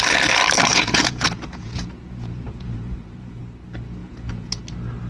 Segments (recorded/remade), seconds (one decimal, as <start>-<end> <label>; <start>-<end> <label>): 0.0-0.7 recorded; 0.7-3.4 remade; 3.4-4.0 recorded; 4.0-4.6 remade; 4.6-5.1 recorded